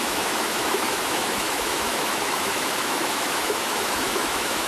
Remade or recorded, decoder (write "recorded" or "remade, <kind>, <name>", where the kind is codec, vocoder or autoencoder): remade, autoencoder, DAC-VAE